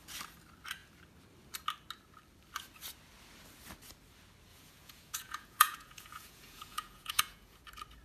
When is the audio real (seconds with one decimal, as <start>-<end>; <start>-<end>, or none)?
0.0-4.5; 7.6-8.0